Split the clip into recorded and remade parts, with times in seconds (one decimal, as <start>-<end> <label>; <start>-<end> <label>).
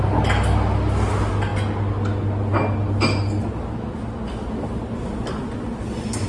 0.0-6.3 recorded